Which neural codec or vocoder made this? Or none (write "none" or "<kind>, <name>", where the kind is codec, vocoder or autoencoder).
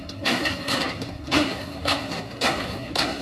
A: codec, SNAC